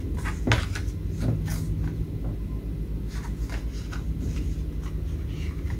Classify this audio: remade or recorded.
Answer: recorded